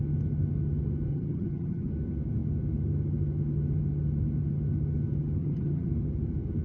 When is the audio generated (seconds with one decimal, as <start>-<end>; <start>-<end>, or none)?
1.1-1.9; 5.4-5.9